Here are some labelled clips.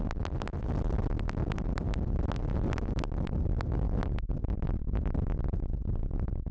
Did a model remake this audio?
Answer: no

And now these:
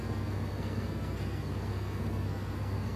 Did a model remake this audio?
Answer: yes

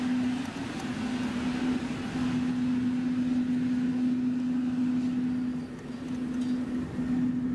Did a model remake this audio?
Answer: no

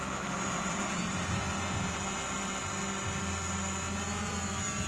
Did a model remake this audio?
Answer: no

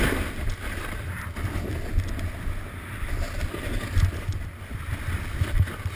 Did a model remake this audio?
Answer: no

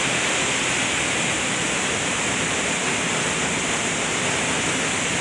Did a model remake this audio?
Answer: no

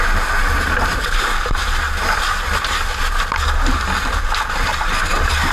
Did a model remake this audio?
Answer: no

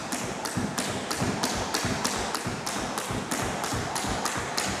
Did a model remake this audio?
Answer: no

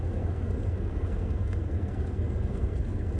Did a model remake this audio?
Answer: yes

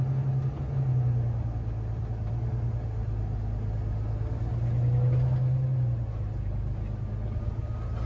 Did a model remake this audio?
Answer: no